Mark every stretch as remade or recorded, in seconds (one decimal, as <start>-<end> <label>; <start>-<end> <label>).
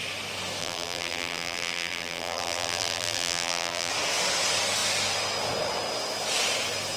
0.0-0.6 recorded; 0.6-3.9 remade; 3.9-7.0 recorded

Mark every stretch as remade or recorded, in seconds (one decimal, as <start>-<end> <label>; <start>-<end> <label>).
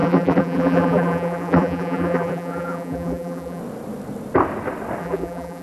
0.0-3.6 remade; 3.6-5.0 recorded; 5.0-5.6 remade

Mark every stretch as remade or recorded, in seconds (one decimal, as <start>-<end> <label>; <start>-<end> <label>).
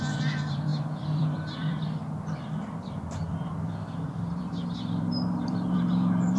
0.0-6.4 remade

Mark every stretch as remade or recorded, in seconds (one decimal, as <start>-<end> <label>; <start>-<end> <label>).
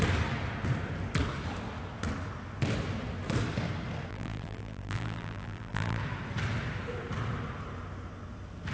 0.0-4.1 recorded; 4.1-6.0 remade; 6.0-8.7 recorded